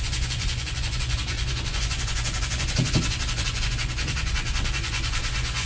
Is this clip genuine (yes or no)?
no